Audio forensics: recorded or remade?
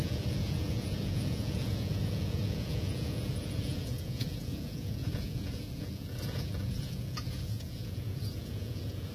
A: remade